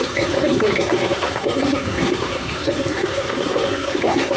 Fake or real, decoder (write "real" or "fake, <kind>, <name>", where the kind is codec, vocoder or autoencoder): fake, codec, SNAC